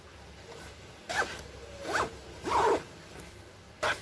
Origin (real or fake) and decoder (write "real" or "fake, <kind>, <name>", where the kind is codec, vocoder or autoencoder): real